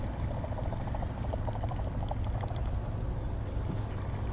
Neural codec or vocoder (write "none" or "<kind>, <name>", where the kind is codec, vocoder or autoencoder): none